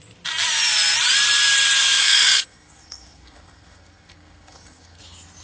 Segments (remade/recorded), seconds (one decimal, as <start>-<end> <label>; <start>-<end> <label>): 0.0-2.0 recorded; 2.0-5.0 remade; 5.0-5.4 recorded